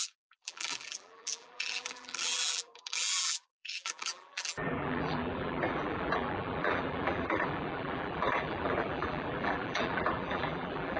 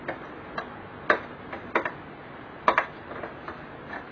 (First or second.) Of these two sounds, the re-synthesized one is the first